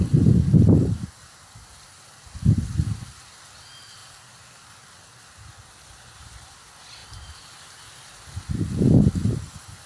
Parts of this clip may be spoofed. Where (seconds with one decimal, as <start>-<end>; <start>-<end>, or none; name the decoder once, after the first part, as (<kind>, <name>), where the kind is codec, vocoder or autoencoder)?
7.0-7.7 (vocoder, BigVGAN v2)